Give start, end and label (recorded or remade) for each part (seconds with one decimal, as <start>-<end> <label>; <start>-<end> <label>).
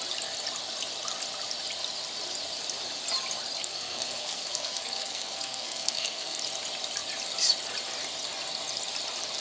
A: 0.0-3.6 recorded; 3.6-6.4 remade; 6.4-9.4 recorded